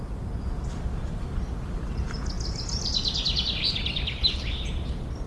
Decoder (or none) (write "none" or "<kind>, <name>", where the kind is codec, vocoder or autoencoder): vocoder, BigVGAN v2